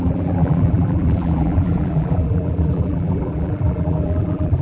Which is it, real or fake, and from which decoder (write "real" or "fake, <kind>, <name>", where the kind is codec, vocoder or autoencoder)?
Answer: fake, vocoder, BigVGAN v2